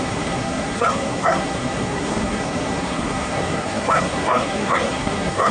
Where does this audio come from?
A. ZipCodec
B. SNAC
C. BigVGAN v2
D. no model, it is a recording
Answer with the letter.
B